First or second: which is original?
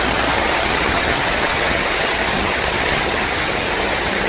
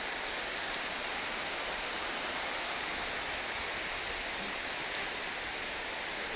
second